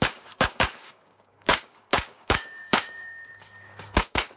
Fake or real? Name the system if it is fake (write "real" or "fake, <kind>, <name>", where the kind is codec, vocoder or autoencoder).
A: fake, codec, DAC